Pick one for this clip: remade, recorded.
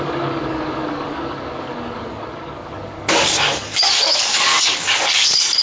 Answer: remade